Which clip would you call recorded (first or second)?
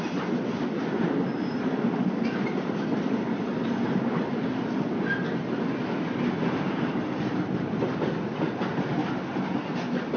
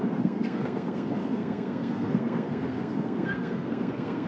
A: first